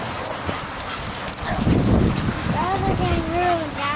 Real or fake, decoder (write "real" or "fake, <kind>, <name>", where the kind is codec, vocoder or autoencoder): real